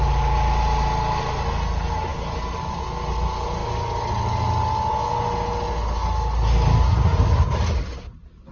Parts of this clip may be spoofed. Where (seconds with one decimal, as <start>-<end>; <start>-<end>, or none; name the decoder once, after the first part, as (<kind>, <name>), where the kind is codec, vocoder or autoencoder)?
none